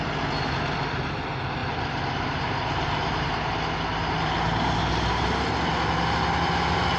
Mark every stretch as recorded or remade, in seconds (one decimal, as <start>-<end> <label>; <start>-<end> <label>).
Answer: 0.0-1.6 recorded; 1.6-3.5 remade; 3.5-3.9 recorded; 3.9-5.7 remade; 5.7-7.0 recorded